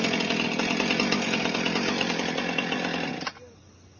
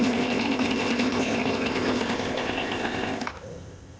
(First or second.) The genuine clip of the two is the first